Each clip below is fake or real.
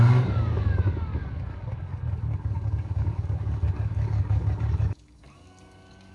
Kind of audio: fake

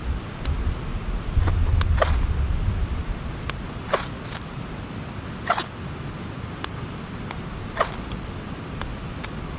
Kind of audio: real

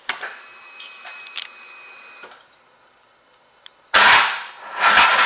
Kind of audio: real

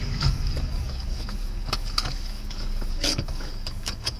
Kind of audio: fake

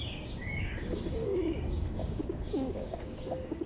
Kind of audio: fake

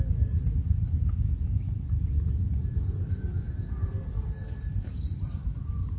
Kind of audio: real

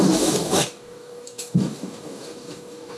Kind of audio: fake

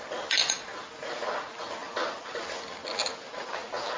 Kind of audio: real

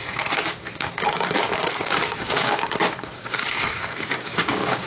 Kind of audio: fake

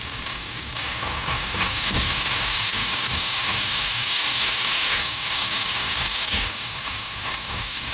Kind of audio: fake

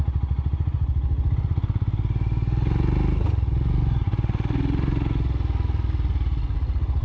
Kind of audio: real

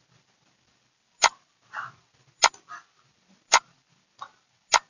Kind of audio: real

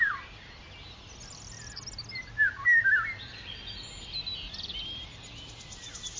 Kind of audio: real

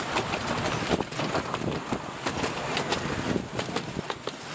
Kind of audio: real